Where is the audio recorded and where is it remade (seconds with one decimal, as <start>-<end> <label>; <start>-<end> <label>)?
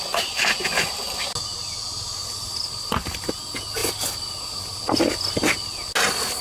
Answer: 0.0-2.2 recorded; 2.2-3.3 remade; 3.3-6.4 recorded